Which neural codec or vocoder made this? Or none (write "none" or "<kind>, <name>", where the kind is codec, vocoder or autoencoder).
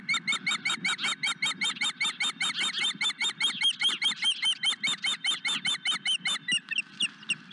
none